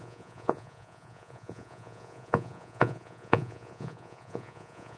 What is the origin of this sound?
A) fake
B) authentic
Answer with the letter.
A